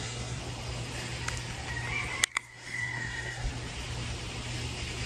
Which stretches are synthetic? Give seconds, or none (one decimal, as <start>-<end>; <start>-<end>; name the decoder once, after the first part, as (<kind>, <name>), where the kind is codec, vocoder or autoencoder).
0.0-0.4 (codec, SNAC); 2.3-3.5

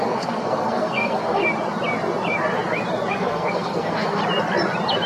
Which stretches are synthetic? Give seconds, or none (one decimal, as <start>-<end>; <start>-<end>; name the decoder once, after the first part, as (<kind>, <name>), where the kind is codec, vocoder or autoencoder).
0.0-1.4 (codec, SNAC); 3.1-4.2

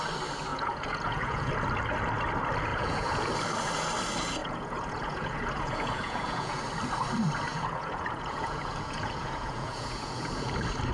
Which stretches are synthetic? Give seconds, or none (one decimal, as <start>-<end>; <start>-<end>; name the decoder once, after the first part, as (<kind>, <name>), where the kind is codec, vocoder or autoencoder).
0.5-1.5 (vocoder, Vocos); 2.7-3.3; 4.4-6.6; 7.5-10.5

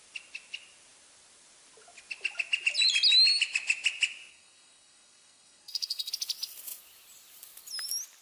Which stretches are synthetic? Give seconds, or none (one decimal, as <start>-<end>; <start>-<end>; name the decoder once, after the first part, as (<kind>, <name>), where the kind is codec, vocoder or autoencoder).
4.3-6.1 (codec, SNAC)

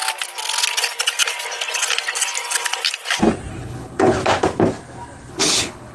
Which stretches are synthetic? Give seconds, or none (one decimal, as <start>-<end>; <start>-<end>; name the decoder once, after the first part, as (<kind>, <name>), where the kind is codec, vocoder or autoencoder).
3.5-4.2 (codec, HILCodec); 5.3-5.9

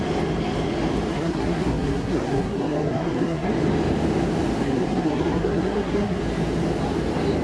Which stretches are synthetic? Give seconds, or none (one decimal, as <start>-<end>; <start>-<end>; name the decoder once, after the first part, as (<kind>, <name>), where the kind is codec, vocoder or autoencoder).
1.1-3.5 (codec, SNAC); 4.6-6.2

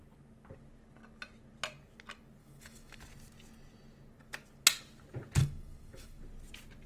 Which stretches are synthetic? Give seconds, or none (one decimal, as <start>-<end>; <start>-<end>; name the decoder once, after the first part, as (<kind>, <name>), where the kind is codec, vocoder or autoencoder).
2.4-3.0 (autoencoder, DAC-VAE); 5.4-6.2

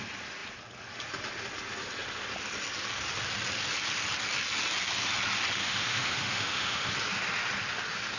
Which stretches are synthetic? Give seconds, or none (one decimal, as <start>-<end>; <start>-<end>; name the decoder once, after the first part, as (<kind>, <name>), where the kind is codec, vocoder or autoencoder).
5.6-6.9 (autoencoder, DAC-VAE)